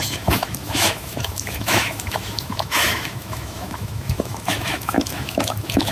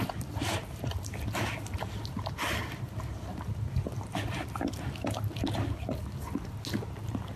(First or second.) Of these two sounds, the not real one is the first